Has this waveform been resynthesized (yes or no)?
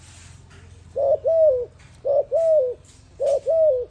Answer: no